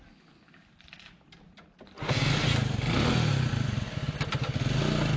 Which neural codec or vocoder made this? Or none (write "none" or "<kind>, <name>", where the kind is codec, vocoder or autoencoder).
none